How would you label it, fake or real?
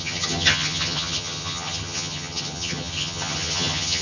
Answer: fake